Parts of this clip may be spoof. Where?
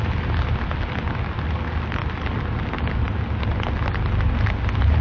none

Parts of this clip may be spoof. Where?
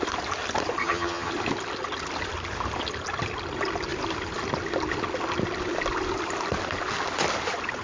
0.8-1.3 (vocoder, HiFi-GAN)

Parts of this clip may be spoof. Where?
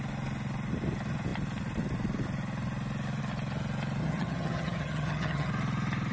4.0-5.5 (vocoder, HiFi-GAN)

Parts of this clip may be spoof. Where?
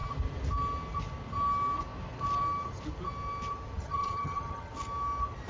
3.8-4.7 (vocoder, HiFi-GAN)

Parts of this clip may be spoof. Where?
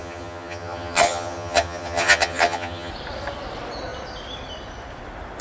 0.0-2.9 (vocoder, HiFi-GAN)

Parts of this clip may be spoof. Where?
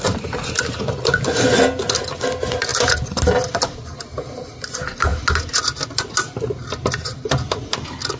none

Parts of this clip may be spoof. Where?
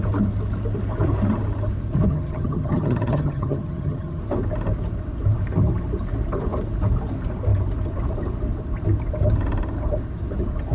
2.1-4.2 (vocoder, HiFi-GAN)